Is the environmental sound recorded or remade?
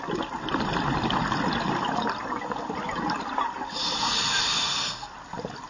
recorded